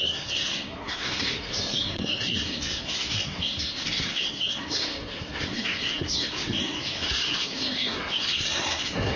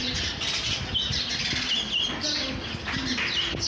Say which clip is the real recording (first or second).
second